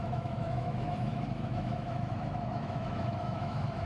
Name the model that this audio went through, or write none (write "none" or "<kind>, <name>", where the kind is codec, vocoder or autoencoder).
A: autoencoder, DAC-VAE